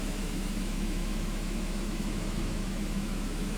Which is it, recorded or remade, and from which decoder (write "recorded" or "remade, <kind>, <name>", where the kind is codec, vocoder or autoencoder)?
remade, autoencoder, DAC-VAE